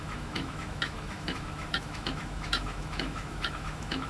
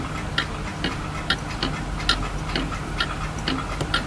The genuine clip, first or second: second